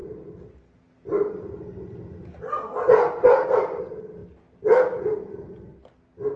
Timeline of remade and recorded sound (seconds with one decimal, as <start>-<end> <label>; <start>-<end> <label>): 0.0-6.4 recorded